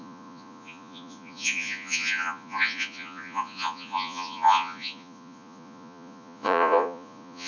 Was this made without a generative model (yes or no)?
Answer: no